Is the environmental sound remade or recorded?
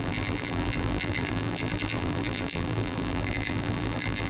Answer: remade